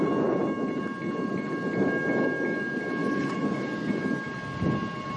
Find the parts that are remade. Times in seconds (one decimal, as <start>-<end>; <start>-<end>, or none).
3.0-3.6